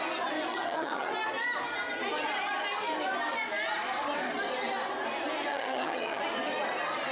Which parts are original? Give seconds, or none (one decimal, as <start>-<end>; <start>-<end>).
0.0-0.5; 1.1-5.5; 6.2-7.1